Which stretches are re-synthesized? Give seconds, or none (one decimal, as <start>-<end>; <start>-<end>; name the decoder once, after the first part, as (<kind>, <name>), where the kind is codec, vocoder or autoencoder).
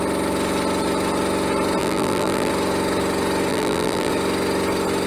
1.8-2.5 (vocoder, BigVGAN v2); 3.5-4.1